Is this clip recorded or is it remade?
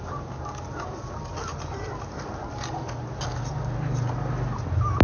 recorded